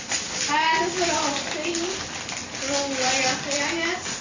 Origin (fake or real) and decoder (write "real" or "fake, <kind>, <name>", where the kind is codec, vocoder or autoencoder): real